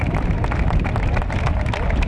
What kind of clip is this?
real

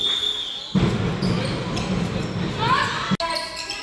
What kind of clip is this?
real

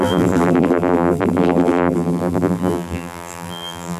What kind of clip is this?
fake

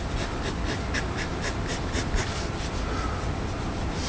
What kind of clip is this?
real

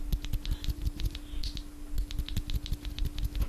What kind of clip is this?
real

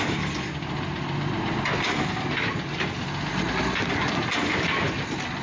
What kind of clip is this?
real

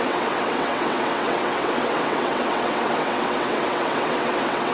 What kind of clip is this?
fake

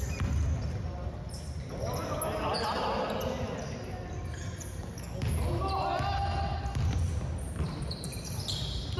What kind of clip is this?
real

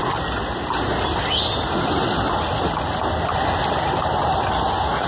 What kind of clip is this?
real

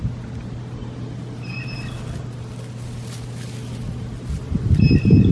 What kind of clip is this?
real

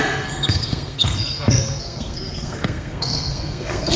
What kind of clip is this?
fake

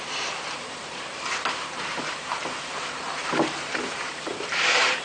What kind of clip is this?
fake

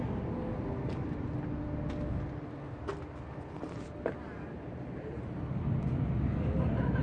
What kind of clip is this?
real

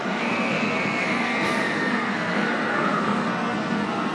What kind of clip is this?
fake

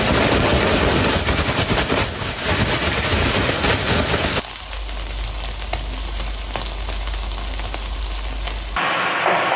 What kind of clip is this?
real